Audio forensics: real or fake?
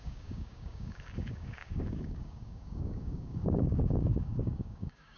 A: fake